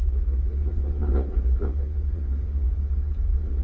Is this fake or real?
fake